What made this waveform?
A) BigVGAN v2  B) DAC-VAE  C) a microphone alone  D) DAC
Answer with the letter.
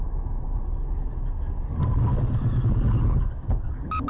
C